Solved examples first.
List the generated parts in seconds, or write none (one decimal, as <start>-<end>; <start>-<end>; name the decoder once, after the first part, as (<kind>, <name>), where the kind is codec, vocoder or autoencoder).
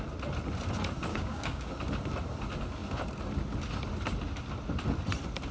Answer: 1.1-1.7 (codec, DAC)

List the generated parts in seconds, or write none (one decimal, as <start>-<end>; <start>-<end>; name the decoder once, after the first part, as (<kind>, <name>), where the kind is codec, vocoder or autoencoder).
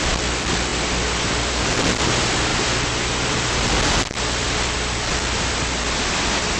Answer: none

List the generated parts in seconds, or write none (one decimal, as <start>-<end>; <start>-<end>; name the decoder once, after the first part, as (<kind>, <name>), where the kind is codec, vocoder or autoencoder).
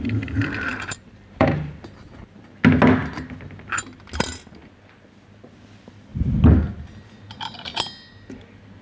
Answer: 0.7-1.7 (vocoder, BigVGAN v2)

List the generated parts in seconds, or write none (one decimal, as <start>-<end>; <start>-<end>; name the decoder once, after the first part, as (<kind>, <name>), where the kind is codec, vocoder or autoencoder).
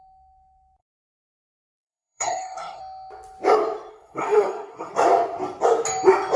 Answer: 0.8-2.8 (codec, SNAC); 3.9-4.9